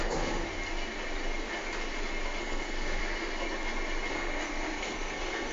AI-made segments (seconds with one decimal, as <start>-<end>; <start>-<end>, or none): 0.0-0.4; 2.4-3.0; 4.1-5.5

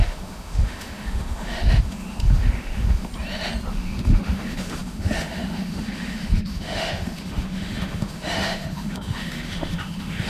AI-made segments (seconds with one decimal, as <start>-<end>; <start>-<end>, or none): 0.0-3.1; 3.7-10.3

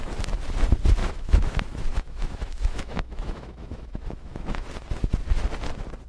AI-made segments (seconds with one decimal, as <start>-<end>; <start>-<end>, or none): 1.0-4.7

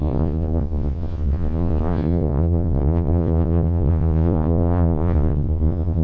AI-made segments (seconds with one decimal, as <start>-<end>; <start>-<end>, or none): 0.0-6.0

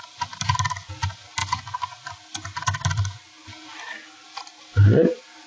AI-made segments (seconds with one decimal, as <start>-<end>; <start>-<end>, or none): none